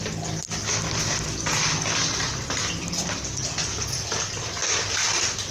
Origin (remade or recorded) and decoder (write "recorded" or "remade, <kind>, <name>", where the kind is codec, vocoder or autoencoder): recorded